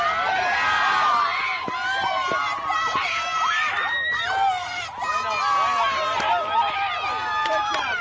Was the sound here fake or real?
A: real